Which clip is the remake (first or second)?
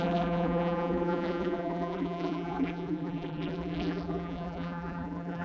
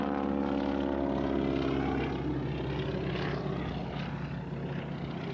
first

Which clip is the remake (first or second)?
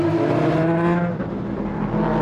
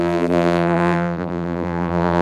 second